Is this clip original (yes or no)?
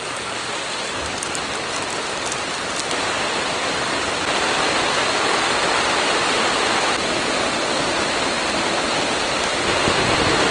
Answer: yes